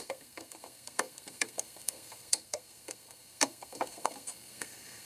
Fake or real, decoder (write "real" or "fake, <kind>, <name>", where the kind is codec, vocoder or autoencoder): fake, codec, SNAC